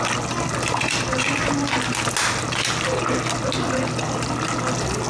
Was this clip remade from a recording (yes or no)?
no